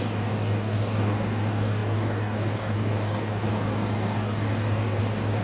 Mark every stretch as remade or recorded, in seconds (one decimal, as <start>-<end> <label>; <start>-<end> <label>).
0.0-5.4 remade